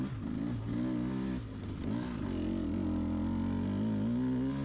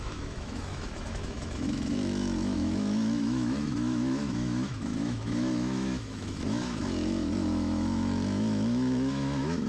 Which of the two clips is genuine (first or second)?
first